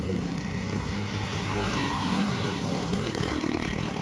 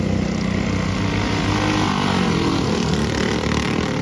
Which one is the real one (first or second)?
second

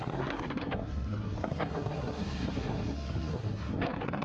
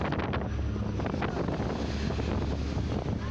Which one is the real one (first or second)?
second